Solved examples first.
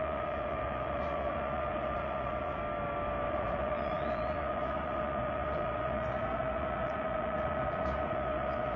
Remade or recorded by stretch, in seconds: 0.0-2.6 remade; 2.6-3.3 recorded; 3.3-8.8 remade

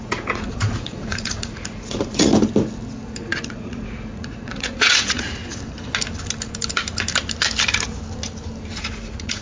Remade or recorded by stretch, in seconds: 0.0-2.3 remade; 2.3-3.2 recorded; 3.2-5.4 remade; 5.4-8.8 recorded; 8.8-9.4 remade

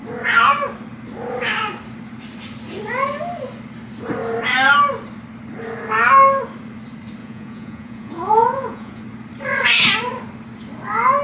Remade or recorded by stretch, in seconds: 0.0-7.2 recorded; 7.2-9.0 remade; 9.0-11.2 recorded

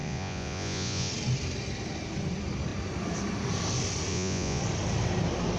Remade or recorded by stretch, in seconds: 0.0-1.1 remade; 1.1-4.1 recorded; 4.1-4.6 remade; 4.6-5.6 recorded

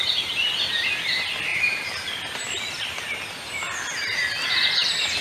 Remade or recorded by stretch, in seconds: 0.0-5.2 recorded

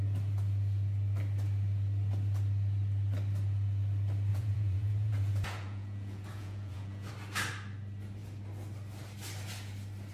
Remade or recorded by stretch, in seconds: 0.0-4.3 recorded; 4.3-7.1 remade; 7.1-10.1 recorded

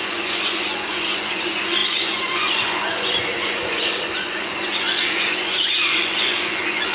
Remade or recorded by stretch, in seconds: 0.0-6.9 remade